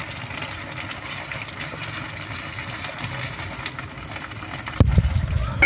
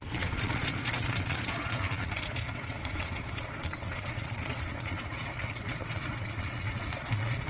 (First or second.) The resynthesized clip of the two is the second